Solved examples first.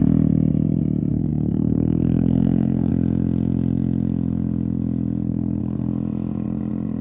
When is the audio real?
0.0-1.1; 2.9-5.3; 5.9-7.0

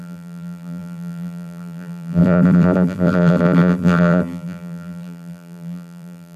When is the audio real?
none

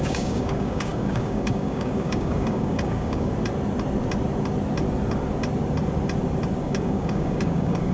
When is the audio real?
3.3-6.6

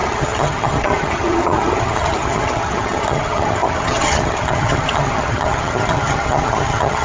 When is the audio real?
none